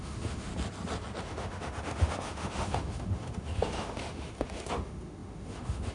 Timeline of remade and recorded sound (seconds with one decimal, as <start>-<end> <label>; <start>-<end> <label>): 0.0-0.5 remade; 0.5-1.2 recorded; 1.2-5.9 remade